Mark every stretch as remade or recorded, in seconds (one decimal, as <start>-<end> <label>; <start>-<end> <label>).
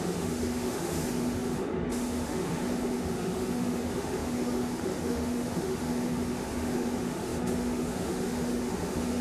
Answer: 0.0-9.2 remade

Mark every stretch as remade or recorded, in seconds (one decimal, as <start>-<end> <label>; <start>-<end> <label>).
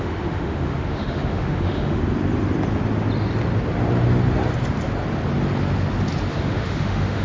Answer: 0.0-2.0 remade; 2.0-6.3 recorded; 6.3-7.2 remade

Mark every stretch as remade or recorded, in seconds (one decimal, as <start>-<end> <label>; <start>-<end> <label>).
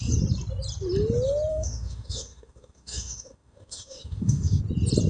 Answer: 0.0-1.5 recorded; 1.5-4.6 remade; 4.6-5.1 recorded